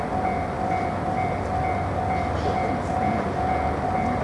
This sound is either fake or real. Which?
real